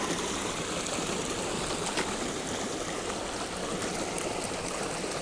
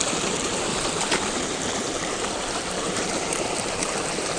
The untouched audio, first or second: first